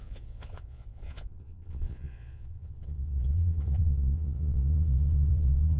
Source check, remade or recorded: remade